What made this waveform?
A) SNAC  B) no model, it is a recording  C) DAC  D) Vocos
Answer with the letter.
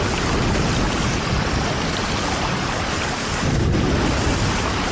B